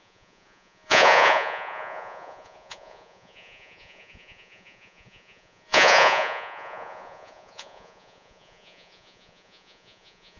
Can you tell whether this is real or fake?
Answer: fake